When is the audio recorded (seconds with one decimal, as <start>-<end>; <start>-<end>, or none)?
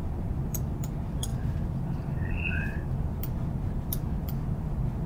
0.0-5.1